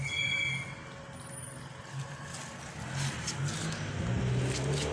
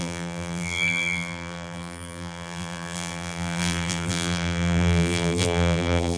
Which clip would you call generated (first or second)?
second